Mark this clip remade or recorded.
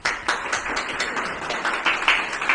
remade